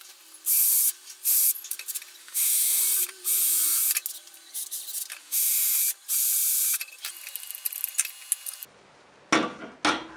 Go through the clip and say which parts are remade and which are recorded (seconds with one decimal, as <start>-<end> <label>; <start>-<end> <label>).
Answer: 0.0-2.2 recorded; 2.2-2.8 remade; 2.8-5.2 recorded; 5.2-5.8 remade; 5.8-10.2 recorded